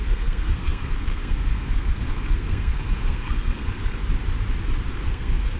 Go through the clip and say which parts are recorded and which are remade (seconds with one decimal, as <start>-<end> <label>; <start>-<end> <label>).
0.0-4.0 remade; 4.0-4.9 recorded; 4.9-5.6 remade